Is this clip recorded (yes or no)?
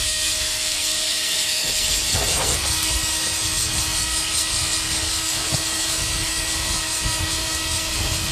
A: no